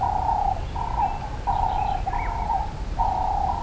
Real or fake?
real